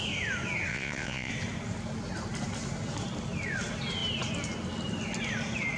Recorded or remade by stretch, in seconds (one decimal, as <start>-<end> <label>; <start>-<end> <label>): 0.0-0.7 recorded; 0.7-1.3 remade; 1.3-5.8 recorded